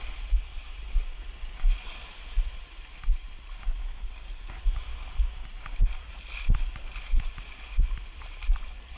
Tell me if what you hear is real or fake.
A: real